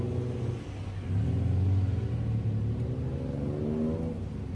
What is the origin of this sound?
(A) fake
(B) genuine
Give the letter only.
B